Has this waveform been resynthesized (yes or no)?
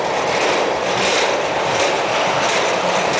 yes